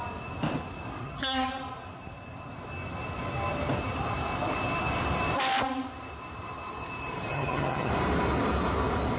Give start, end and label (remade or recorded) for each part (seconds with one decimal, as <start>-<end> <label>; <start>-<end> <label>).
0.0-1.0 recorded; 1.0-1.5 remade; 1.5-7.3 recorded; 7.3-7.9 remade; 7.9-9.2 recorded